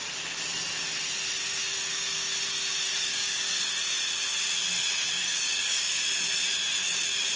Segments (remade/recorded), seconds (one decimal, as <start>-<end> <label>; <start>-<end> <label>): 0.0-2.9 recorded; 2.9-3.7 remade; 3.7-5.2 recorded; 5.2-6.0 remade; 6.0-7.4 recorded